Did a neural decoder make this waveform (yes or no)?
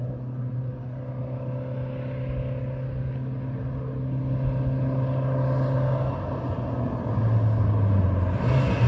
no